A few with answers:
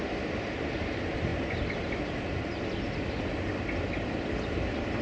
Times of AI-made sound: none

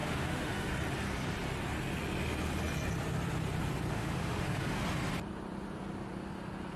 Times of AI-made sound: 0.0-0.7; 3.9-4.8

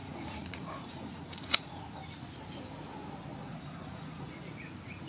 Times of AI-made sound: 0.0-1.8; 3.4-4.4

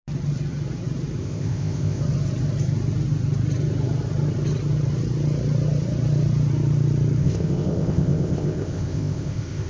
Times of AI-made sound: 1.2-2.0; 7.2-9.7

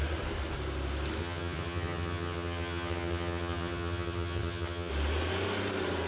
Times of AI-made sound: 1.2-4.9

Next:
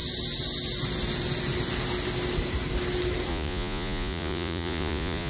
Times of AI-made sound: 3.3-5.3